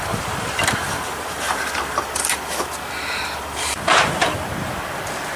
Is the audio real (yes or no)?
no